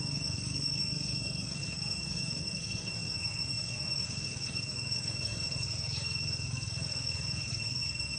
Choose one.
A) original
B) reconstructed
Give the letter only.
B